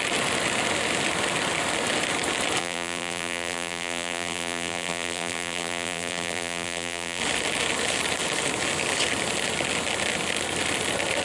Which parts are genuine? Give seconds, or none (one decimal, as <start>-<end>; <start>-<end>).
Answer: 0.0-2.6; 7.2-11.2